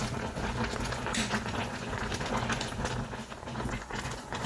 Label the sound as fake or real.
fake